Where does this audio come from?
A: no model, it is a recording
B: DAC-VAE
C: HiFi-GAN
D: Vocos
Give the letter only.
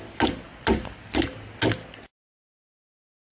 A